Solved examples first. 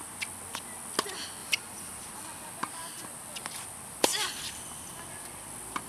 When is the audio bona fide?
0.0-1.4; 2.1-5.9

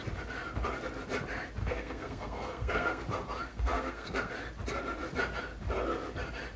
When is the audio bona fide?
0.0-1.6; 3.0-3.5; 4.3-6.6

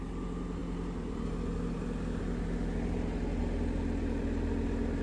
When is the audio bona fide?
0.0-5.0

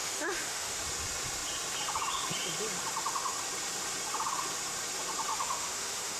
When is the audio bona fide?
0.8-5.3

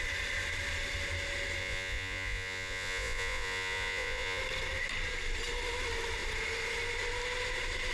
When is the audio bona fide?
0.0-1.6; 4.4-7.9

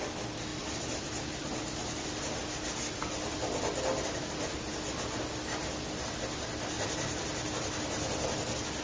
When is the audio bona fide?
0.0-7.5; 8.1-8.8

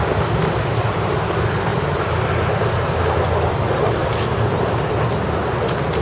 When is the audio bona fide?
0.0-6.0